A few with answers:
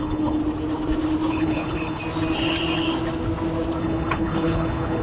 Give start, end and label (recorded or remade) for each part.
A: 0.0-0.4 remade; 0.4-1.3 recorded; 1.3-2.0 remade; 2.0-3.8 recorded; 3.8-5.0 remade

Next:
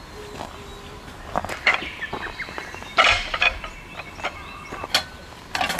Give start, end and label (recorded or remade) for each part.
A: 0.0-2.6 recorded; 2.6-3.6 remade; 3.6-5.8 recorded

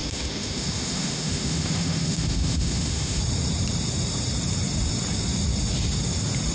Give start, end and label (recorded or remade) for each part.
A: 0.0-3.2 remade; 3.2-6.5 recorded

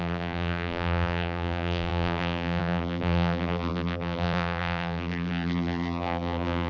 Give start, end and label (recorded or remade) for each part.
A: 0.0-6.7 remade

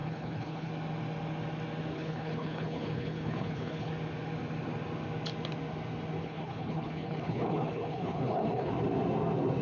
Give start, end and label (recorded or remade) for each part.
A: 0.0-0.7 remade; 0.7-1.9 recorded; 1.9-3.9 remade; 3.9-6.2 recorded; 6.2-8.7 remade; 8.7-9.6 recorded

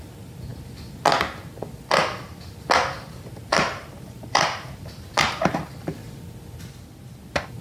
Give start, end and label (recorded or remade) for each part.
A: 0.0-3.5 recorded; 3.5-5.6 remade; 5.6-7.6 recorded

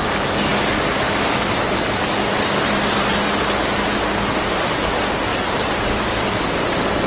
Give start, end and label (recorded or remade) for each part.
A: 0.0-5.3 recorded; 5.3-5.9 remade; 5.9-7.1 recorded